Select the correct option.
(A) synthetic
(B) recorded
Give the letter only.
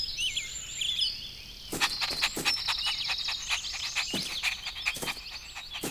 B